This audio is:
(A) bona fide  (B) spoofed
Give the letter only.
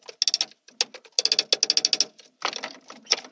A